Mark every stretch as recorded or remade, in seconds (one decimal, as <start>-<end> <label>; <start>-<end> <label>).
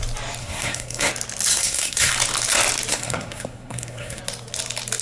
0.0-0.4 recorded; 0.4-1.1 remade; 1.1-1.5 recorded; 1.5-2.1 remade; 2.1-2.9 recorded; 2.9-4.2 remade; 4.2-5.0 recorded